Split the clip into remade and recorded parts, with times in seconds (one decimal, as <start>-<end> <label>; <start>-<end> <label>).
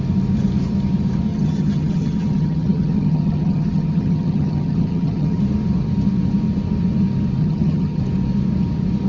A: 0.0-1.3 recorded; 1.3-5.4 remade; 5.4-7.4 recorded; 7.4-8.0 remade; 8.0-9.1 recorded